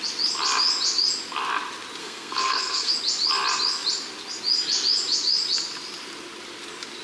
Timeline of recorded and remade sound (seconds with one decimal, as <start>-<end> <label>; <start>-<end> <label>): 0.0-2.0 recorded; 2.0-2.9 remade; 2.9-7.0 recorded